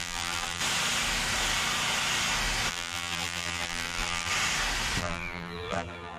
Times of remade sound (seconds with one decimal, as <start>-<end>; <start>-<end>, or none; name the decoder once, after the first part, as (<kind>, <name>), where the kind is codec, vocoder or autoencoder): 0.0-0.6 (vocoder, BigVGAN v2); 2.7-4.3; 5.0-6.2